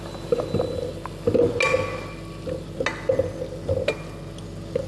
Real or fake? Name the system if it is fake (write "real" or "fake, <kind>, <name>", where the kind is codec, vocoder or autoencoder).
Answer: real